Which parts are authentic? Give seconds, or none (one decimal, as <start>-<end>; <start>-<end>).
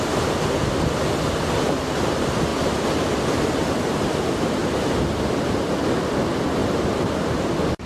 0.0-4.6; 5.6-6.6; 7.5-7.9